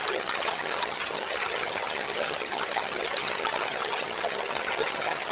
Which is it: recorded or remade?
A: remade